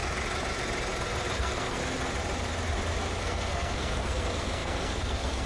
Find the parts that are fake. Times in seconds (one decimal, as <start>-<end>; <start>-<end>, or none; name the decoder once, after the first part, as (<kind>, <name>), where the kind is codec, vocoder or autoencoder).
1.4-1.8 (codec, SNAC); 3.2-5.5